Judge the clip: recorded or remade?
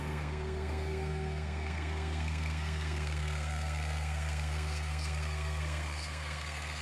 remade